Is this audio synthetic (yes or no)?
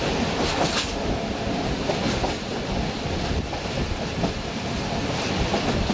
no